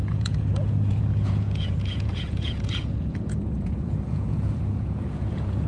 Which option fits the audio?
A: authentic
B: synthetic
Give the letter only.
B